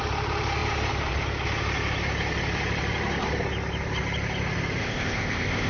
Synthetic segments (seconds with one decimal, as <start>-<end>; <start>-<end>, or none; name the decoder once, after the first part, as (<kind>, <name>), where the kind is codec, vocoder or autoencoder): 4.8-5.7 (codec, ZipCodec)